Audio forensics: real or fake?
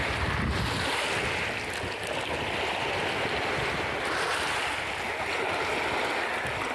real